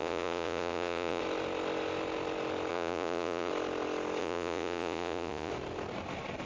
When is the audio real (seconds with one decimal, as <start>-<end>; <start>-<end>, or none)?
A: 1.2-2.7; 3.5-4.2; 5.5-6.5